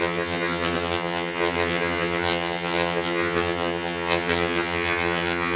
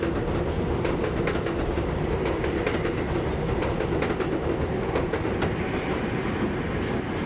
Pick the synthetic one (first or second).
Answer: first